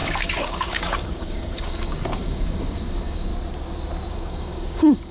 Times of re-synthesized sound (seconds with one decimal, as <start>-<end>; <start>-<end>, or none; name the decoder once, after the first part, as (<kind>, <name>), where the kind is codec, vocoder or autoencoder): 0.0-3.3 (codec, DAC); 4.1-5.1